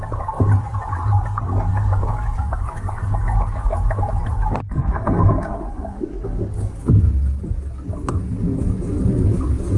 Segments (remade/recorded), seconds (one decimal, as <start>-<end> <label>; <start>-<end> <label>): 0.0-1.7 recorded; 1.7-3.2 remade; 3.2-5.7 recorded; 5.7-6.8 remade; 6.8-9.8 recorded